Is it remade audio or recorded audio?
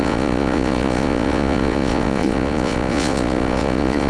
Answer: remade